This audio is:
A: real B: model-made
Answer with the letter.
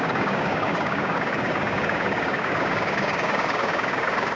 B